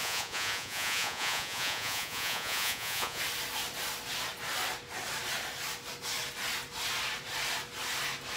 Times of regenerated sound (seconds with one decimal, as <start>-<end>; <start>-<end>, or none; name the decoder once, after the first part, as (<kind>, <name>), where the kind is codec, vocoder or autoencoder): 0.0-3.2 (vocoder, Vocos)